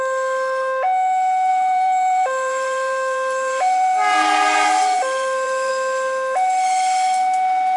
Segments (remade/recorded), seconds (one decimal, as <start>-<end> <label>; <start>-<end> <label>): 0.0-1.5 recorded; 1.5-5.7 remade; 5.7-7.8 recorded